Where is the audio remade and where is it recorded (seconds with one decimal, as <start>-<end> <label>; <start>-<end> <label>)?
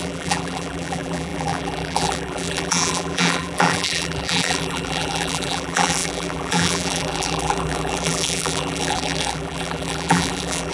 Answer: 0.0-10.7 remade